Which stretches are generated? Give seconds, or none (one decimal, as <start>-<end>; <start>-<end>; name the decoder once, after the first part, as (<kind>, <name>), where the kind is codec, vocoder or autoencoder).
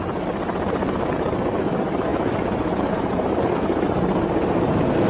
none